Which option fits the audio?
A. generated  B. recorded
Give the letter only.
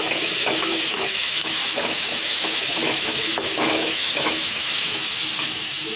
A